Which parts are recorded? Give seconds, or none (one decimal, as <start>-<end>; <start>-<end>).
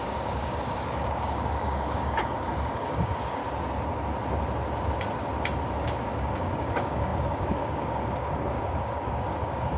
3.4-5.8